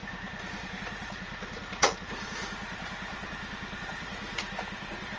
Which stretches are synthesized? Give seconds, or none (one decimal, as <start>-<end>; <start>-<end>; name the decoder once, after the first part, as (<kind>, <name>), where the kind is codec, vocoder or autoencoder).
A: 0.0-3.1 (vocoder, Vocos); 3.8-5.2